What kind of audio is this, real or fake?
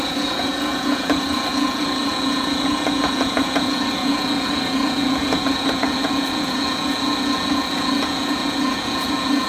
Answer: fake